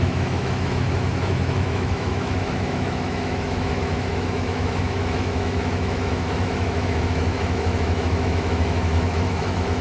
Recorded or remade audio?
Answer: remade